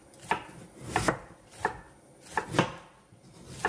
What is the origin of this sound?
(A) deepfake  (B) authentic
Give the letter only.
B